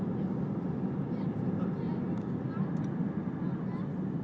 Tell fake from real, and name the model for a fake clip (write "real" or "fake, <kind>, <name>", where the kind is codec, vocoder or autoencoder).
real